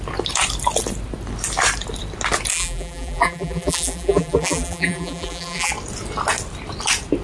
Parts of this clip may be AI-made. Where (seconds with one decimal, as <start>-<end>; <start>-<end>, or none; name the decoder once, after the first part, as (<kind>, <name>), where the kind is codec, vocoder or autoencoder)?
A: 2.5-5.7 (vocoder, BigVGAN v2)